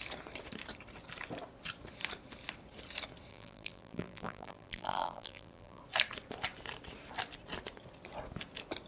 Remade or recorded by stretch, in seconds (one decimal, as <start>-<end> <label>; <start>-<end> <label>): 0.0-3.3 recorded; 3.3-5.8 remade; 5.8-8.9 recorded